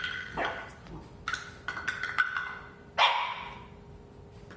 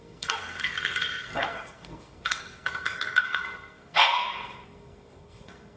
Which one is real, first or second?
first